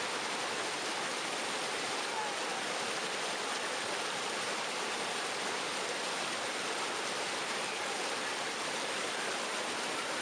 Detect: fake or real real